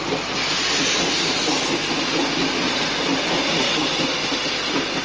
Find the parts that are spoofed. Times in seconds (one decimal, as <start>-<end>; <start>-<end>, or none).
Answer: none